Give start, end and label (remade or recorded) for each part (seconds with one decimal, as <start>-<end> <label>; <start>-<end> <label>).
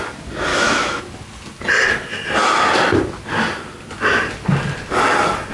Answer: 0.0-0.5 recorded; 0.5-1.0 remade; 1.0-5.5 recorded